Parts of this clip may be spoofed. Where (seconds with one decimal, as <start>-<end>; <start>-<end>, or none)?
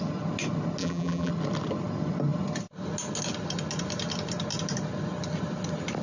0.8-1.3